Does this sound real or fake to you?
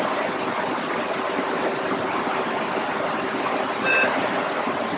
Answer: real